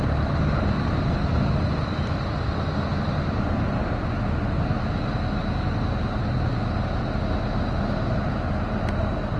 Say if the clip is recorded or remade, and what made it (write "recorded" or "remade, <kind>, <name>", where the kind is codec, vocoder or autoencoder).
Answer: recorded